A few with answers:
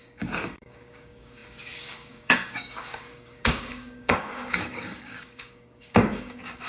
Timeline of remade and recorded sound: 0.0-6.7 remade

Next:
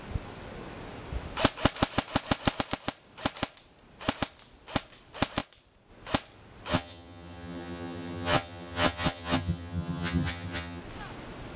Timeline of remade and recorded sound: 0.0-6.7 recorded; 6.7-10.8 remade; 10.8-11.6 recorded